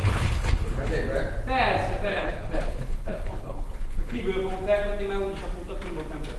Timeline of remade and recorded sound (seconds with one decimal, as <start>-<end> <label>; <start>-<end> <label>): 0.0-0.9 remade; 0.9-2.1 recorded; 2.1-4.2 remade; 4.2-6.4 recorded